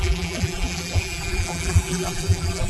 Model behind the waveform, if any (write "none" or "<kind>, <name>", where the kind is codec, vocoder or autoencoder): vocoder, BigVGAN v2